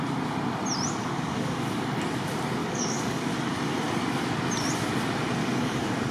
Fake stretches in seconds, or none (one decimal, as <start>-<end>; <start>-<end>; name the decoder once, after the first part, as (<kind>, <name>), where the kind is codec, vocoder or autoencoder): 1.0-1.7 (codec, DAC); 2.6-3.3; 5.4-6.1